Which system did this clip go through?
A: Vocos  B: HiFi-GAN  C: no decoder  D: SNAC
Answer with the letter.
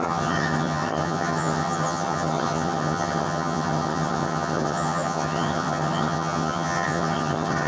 B